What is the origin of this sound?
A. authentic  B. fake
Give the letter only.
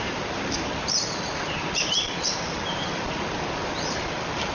B